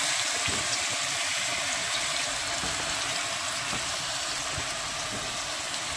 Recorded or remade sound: remade